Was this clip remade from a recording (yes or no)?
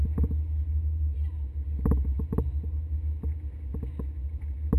no